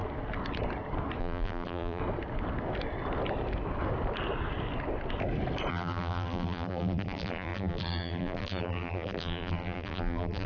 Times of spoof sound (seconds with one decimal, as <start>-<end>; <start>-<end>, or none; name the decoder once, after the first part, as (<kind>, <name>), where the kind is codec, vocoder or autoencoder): 1.2-2.0 (vocoder, BigVGAN v2); 5.7-10.5